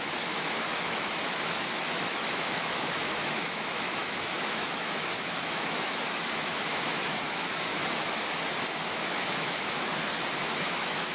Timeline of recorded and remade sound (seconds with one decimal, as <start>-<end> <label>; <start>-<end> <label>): 0.0-7.7 remade; 7.7-8.8 recorded; 8.8-9.9 remade; 9.9-10.5 recorded; 10.5-11.1 remade